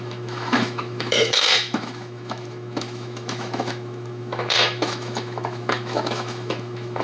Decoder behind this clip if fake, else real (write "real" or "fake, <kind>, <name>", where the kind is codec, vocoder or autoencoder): fake, autoencoder, DAC-VAE